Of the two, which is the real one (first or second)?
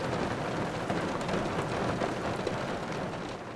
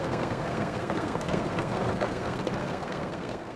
first